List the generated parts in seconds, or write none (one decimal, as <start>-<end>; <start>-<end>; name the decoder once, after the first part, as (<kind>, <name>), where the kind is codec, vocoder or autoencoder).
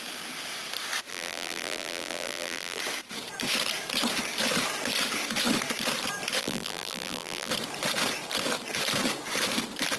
1.1-2.8 (vocoder, BigVGAN v2); 6.4-7.5